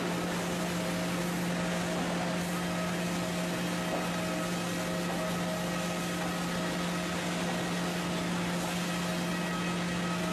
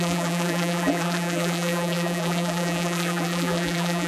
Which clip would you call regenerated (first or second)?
second